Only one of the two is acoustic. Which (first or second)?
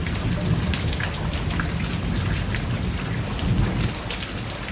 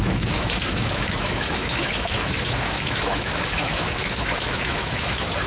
first